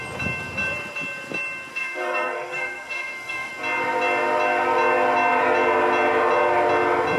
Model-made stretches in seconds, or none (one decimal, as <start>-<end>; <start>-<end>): 1.7-3.5